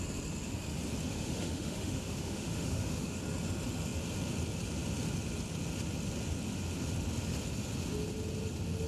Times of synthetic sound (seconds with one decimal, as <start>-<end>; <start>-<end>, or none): 1.1-3.2